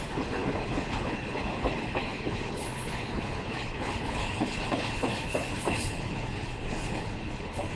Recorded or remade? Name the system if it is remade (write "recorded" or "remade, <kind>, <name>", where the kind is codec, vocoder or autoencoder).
remade, codec, HILCodec